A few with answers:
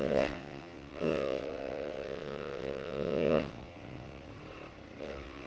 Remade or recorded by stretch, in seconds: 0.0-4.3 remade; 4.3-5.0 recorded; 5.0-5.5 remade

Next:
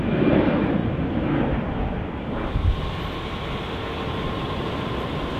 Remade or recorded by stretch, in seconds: 0.0-5.4 recorded